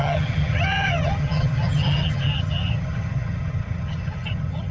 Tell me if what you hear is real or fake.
fake